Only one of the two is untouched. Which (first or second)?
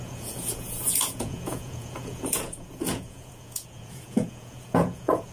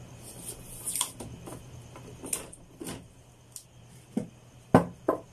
second